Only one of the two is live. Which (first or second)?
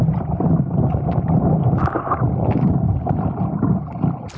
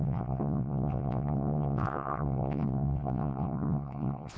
first